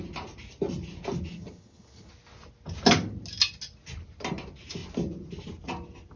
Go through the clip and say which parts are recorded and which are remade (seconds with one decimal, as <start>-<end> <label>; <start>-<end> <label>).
0.0-1.3 recorded; 1.3-2.1 remade; 2.1-6.2 recorded